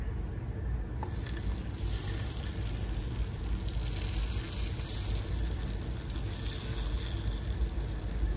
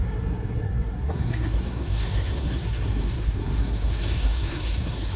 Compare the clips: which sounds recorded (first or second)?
first